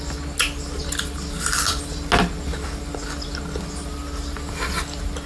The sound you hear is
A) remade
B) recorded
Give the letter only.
B